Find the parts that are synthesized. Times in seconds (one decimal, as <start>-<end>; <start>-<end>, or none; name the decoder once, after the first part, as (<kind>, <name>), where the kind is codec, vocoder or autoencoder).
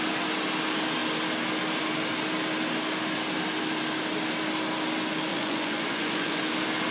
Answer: 5.3-6.4 (vocoder, Vocos)